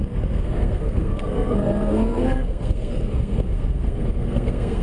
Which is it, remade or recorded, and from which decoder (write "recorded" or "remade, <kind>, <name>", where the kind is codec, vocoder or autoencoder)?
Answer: remade, codec, SNAC